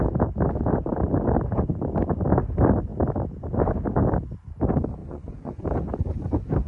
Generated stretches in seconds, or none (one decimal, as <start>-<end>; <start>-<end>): 5.0-5.6